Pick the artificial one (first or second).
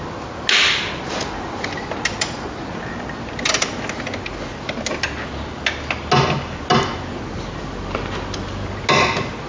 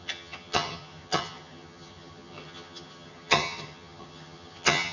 second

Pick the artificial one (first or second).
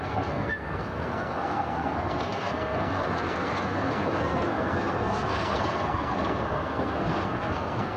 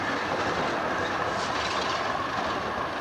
first